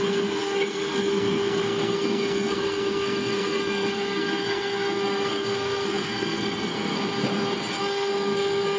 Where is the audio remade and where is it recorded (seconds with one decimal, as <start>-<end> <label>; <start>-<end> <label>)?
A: 0.0-7.0 remade; 7.0-7.8 recorded; 7.8-8.8 remade